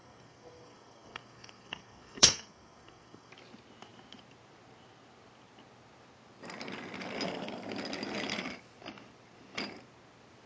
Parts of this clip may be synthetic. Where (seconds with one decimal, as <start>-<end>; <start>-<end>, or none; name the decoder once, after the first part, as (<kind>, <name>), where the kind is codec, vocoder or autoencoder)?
0.0-3.3 (codec, SNAC)